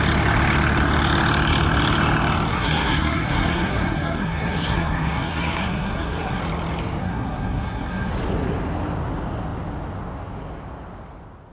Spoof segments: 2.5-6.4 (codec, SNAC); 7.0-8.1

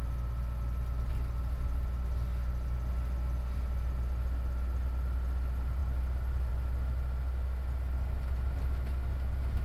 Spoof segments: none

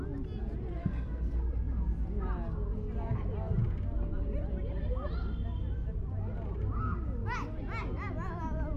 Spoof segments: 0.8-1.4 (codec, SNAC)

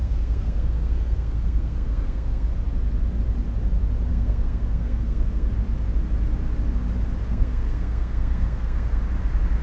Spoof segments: 0.0-2.5 (codec, SNAC); 4.1-5.5; 7.3-9.0

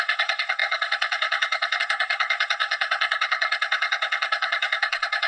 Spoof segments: 0.0-5.3 (codec, SNAC)